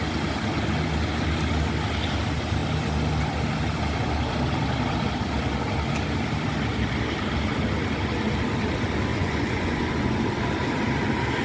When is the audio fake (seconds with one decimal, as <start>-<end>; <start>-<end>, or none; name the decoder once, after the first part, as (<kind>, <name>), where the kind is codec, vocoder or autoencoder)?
9.1-10.2 (vocoder, Vocos)